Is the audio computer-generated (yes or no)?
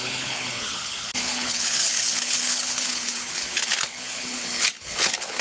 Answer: yes